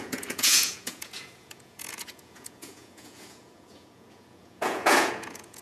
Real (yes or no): no